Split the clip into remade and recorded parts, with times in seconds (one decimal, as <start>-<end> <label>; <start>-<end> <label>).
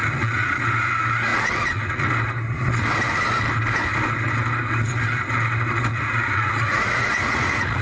0.0-0.6 remade; 0.6-1.3 recorded; 1.3-2.1 remade; 2.1-5.9 recorded; 5.9-7.8 remade